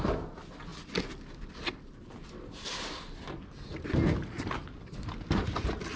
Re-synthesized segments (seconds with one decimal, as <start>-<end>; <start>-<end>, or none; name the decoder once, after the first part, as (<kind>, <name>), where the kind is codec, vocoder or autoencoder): none